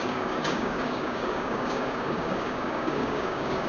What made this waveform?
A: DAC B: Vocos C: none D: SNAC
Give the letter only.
A